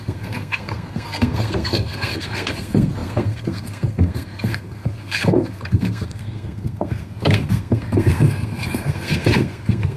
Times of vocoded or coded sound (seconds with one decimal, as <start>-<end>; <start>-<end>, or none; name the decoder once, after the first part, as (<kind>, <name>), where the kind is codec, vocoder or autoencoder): 0.0-10.0 (codec, SNAC)